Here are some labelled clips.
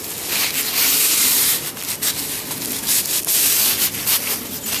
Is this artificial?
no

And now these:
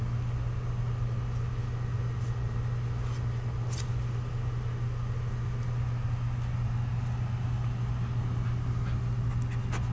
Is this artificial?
no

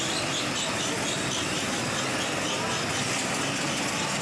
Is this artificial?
no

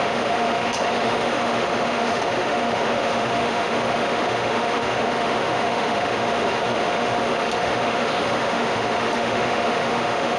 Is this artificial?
yes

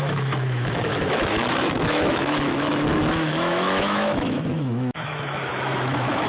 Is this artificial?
yes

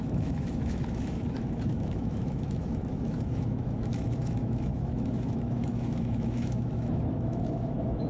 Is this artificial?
yes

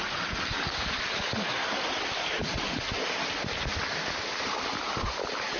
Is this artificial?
no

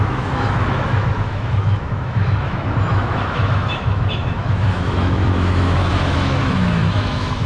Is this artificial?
yes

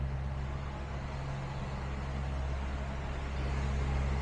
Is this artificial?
no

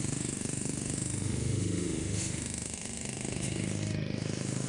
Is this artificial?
yes